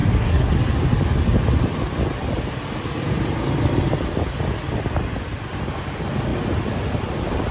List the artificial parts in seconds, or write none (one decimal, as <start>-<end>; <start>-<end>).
0.0-0.5